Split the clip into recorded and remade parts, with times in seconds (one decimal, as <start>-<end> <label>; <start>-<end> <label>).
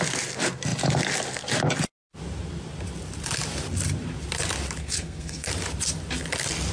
0.0-4.8 recorded; 4.8-5.5 remade; 5.5-6.7 recorded